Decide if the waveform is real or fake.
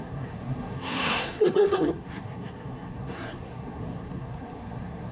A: fake